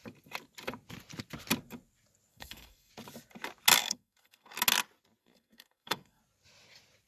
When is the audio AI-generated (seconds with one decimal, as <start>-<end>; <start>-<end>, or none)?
2.3-2.9; 3.8-4.5; 5.2-6.2